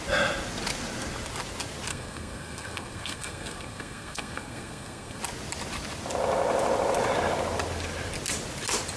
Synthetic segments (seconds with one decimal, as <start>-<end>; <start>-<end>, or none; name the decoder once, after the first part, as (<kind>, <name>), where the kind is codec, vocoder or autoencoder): 1.9-5.2 (codec, SNAC)